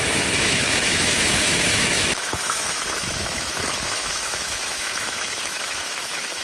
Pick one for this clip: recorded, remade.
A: remade